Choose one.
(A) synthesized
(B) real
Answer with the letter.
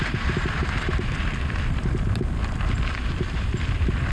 A